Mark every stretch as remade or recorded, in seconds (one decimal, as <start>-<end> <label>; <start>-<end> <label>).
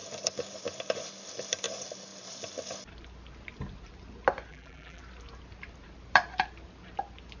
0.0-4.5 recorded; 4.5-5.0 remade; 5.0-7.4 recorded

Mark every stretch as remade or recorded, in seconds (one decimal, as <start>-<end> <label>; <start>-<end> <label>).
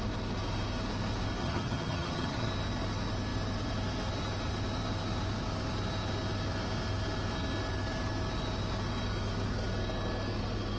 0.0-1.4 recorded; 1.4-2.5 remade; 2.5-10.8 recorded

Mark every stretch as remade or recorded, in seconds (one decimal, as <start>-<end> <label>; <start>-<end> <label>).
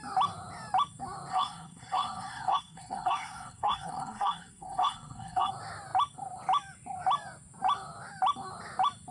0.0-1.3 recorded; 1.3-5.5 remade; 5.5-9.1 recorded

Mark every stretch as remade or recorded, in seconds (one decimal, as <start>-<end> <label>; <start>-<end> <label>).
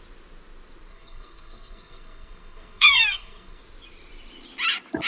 0.0-0.9 recorded; 0.9-3.6 remade; 3.6-5.1 recorded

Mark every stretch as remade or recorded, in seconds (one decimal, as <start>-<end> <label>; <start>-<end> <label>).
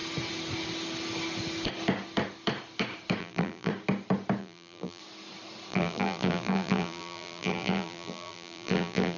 0.0-3.2 recorded; 3.2-3.7 remade; 3.7-4.4 recorded; 4.4-5.0 remade; 5.0-5.7 recorded; 5.7-9.2 remade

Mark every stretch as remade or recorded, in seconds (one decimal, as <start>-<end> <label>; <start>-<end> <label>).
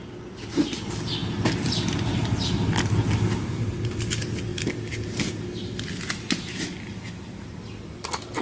0.0-8.4 recorded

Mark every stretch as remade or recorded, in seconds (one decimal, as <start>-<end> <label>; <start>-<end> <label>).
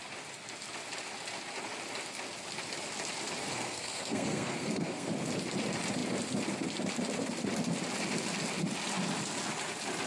0.0-3.5 recorded; 3.5-5.1 remade; 5.1-10.1 recorded